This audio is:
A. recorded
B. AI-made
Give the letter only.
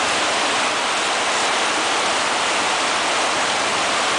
A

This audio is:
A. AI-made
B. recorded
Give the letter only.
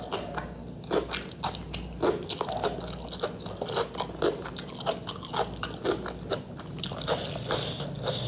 B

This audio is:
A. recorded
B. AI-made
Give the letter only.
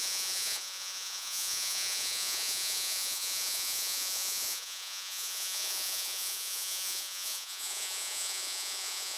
B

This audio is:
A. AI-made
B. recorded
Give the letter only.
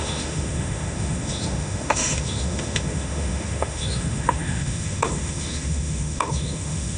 A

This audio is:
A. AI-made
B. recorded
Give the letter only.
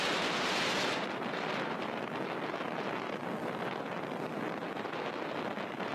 B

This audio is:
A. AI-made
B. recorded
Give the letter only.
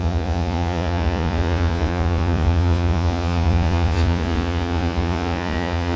A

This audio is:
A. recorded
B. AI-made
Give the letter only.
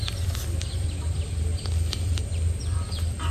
B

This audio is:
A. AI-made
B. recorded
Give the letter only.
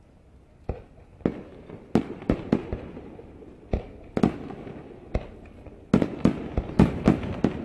B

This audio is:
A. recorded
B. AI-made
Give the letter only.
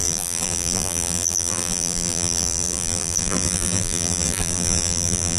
B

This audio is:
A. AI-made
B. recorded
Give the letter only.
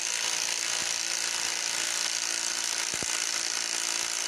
B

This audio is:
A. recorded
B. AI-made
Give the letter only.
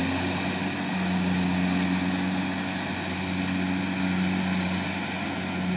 A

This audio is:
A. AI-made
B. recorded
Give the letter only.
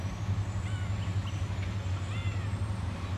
B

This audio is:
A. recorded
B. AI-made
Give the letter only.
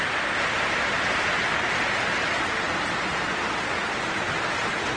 A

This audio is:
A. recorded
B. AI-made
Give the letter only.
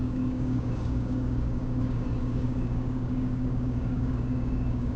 B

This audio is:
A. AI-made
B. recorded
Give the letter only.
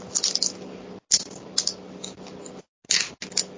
B